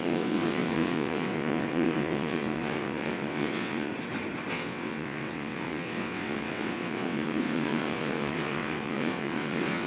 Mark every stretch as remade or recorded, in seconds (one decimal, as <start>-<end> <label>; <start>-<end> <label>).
0.0-3.9 remade; 3.9-4.5 recorded; 4.5-9.9 remade